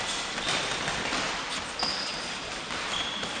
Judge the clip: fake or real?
real